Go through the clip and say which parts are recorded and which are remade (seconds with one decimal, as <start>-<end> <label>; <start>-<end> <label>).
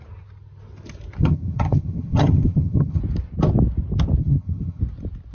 0.0-1.2 recorded; 1.2-3.0 remade; 3.0-4.2 recorded; 4.2-4.8 remade; 4.8-5.3 recorded